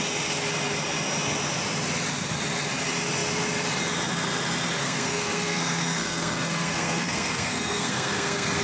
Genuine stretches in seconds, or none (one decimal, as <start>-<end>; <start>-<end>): 0.0-4.8